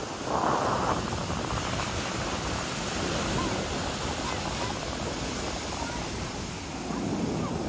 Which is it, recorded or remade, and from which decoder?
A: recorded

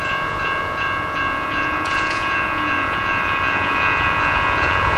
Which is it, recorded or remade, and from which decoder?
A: remade, vocoder, Vocos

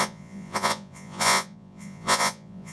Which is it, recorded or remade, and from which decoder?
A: remade, vocoder, Vocos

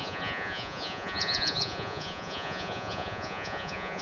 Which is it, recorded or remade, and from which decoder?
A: remade, vocoder, Vocos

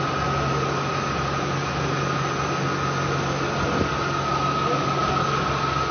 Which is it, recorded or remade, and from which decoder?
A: recorded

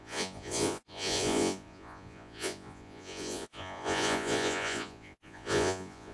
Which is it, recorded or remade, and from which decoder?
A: remade, vocoder, Vocos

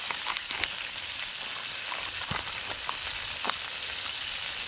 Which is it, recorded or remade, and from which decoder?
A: recorded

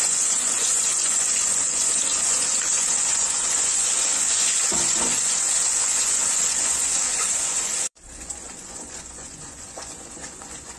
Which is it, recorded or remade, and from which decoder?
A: remade, vocoder, Vocos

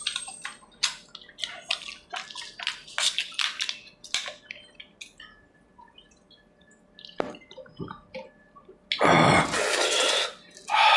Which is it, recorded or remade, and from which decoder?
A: recorded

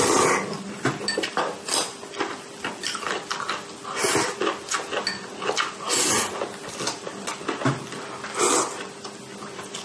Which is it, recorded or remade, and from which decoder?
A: recorded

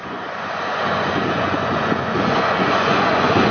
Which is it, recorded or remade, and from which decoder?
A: remade, vocoder, Vocos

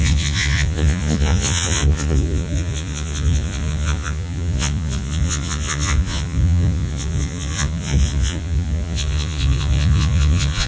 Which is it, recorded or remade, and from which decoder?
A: remade, vocoder, Vocos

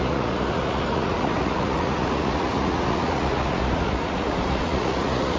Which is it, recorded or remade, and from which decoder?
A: remade, vocoder, Vocos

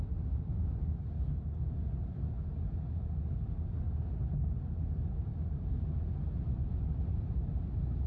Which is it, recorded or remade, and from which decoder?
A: recorded